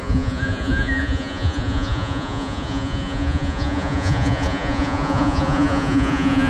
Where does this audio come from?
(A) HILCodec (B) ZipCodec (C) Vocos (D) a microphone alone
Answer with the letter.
C